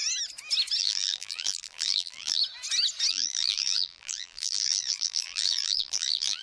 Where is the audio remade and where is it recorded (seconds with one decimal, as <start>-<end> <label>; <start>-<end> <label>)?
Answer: 0.0-0.8 recorded; 0.8-2.4 remade; 2.4-3.1 recorded; 3.1-6.4 remade